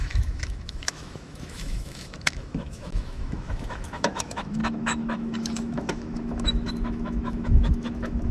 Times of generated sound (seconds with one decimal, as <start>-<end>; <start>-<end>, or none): 0.0-8.3